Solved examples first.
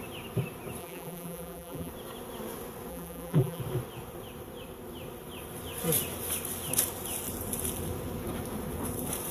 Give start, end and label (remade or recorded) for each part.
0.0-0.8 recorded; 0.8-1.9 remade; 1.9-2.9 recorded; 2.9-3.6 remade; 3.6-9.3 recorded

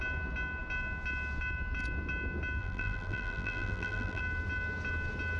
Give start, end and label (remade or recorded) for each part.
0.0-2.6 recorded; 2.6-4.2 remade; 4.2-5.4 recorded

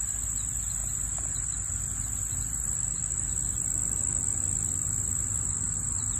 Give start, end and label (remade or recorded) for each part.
0.0-6.2 recorded

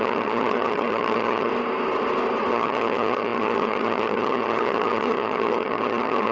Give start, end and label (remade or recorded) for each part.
0.0-1.5 remade; 1.5-2.5 recorded; 2.5-6.3 remade

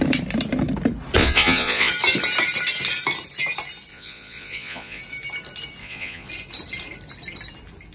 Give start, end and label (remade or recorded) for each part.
0.0-1.2 recorded; 1.2-1.9 remade; 1.9-3.9 recorded; 3.9-5.0 remade; 5.0-5.8 recorded; 5.8-6.3 remade; 6.3-7.9 recorded

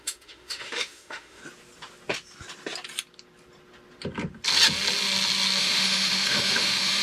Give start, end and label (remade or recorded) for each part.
0.0-1.4 remade; 1.4-5.6 recorded; 5.6-7.0 remade